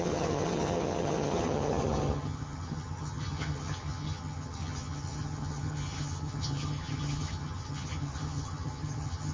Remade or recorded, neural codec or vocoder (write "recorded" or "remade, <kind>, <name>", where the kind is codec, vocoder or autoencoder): remade, vocoder, HiFi-GAN